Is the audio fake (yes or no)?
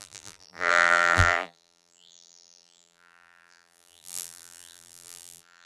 yes